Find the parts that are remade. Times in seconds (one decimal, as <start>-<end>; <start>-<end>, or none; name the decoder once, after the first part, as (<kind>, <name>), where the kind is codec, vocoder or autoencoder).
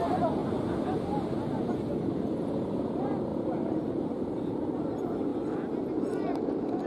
0.0-0.4 (vocoder, BigVGAN v2); 1.1-3.3; 3.9-5.3; 6.5-6.9